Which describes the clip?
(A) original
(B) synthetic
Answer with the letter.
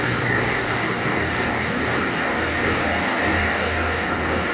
B